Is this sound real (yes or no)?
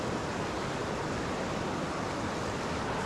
yes